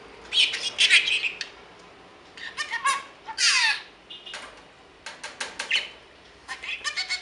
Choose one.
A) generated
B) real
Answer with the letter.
B